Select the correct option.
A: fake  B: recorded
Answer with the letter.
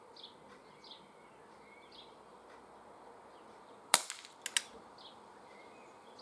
B